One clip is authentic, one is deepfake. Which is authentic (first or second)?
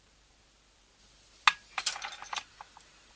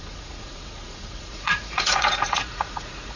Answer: first